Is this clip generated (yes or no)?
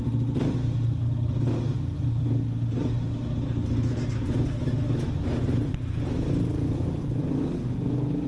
no